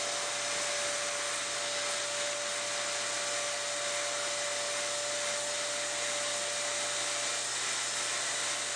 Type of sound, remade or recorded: recorded